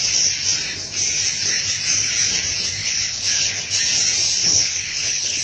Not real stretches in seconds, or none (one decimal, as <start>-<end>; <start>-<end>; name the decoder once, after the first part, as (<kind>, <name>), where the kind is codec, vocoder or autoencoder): 2.8-3.5 (codec, HILCodec); 4.4-5.4